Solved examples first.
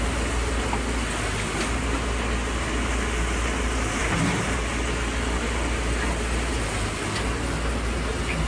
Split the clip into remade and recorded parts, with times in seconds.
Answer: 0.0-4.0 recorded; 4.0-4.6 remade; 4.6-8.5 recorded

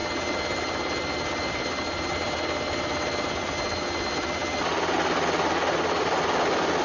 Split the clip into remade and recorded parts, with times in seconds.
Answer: 0.0-6.8 recorded

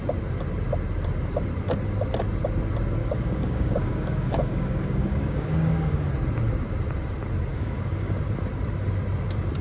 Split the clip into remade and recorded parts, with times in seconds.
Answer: 0.0-3.0 recorded; 3.0-6.1 remade; 6.1-7.5 recorded; 7.5-8.2 remade; 8.2-9.6 recorded